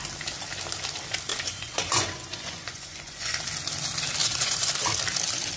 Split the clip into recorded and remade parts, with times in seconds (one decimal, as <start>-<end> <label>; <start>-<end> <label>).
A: 0.0-1.3 recorded; 1.3-3.4 remade; 3.4-4.2 recorded; 4.2-4.7 remade; 4.7-5.6 recorded